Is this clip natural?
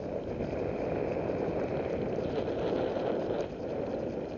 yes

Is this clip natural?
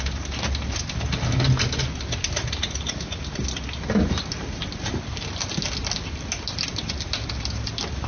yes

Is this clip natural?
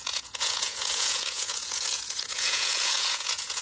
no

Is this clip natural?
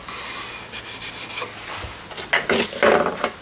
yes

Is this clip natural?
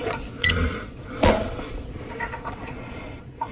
no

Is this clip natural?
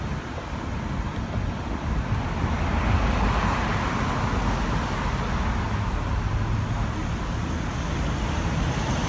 yes